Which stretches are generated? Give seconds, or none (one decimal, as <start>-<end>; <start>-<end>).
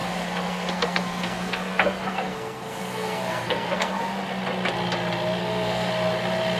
0.0-4.0; 5.4-5.9